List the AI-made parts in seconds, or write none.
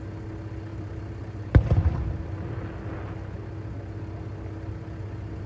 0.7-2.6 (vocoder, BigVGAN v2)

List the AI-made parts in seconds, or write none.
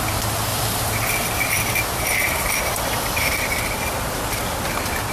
0.5-3.6 (vocoder, BigVGAN v2)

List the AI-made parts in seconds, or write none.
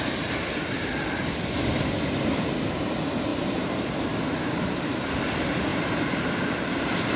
3.3-4.8 (vocoder, BigVGAN v2); 5.7-7.2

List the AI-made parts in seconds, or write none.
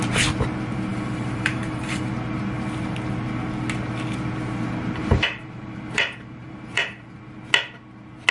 0.9-2.1 (vocoder, BigVGAN v2); 5.0-7.2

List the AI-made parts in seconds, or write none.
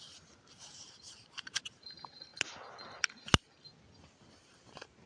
0.0-2.3 (vocoder, BigVGAN v2); 4.3-5.1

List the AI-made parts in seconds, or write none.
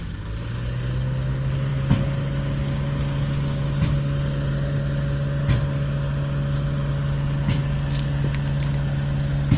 none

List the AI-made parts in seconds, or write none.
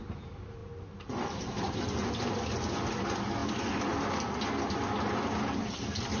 0.6-2.1 (vocoder, BigVGAN v2)